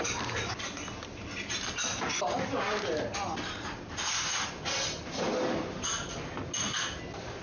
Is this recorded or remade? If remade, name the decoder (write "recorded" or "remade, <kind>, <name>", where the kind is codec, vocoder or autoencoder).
recorded